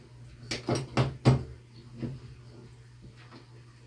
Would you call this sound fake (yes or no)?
no